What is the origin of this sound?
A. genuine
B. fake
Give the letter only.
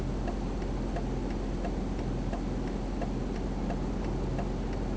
A